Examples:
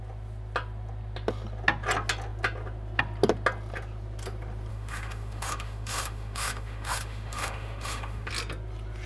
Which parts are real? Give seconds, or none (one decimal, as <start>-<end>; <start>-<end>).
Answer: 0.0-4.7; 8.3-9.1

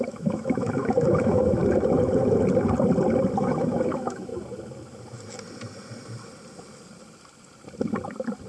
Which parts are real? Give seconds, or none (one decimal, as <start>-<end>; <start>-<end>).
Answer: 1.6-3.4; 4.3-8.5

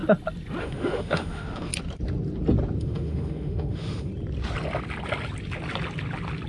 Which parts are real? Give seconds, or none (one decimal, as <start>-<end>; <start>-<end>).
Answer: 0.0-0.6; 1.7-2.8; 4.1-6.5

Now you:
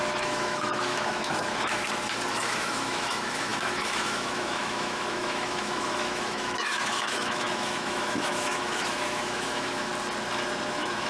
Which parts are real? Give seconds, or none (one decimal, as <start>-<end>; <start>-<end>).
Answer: 1.8-2.3; 9.9-10.7

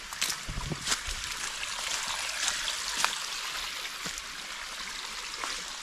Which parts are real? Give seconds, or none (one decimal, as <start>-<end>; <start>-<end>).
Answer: 0.0-5.8

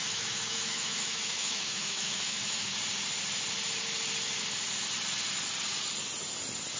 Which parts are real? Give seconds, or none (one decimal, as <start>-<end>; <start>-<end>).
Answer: 2.7-6.8

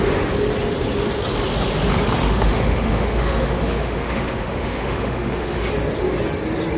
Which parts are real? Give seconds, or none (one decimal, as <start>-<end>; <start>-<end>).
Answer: 0.0-2.2; 5.7-6.8

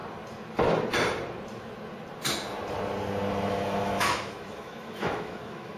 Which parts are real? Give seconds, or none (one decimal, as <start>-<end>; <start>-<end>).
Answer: 0.0-3.5